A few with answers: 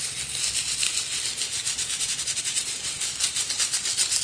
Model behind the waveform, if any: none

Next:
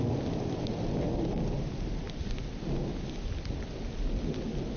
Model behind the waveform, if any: none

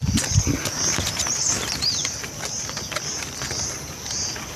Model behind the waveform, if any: none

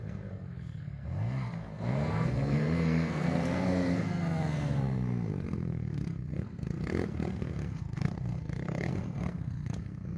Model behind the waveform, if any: codec, SNAC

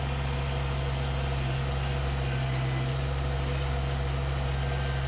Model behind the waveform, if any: none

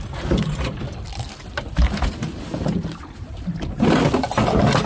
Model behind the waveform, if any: none